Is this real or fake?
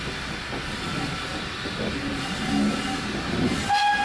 real